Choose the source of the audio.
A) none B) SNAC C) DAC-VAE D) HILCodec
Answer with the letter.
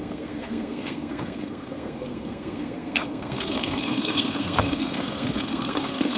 B